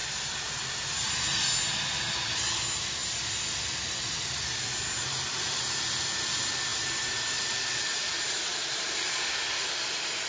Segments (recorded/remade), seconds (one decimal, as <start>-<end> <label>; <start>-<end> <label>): 0.0-0.8 remade; 0.8-6.7 recorded; 6.7-9.1 remade; 9.1-10.3 recorded